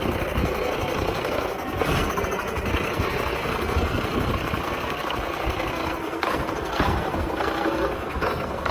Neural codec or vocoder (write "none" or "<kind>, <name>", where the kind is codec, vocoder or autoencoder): codec, SNAC